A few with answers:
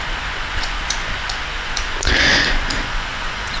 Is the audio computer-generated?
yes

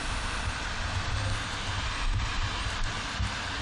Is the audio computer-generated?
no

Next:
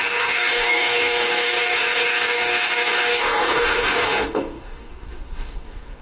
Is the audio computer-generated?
yes